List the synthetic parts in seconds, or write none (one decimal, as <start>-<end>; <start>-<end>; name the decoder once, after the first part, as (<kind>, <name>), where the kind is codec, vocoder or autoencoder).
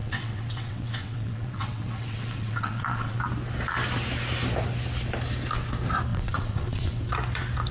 0.0-3.2 (vocoder, WaveNeXt); 6.1-7.1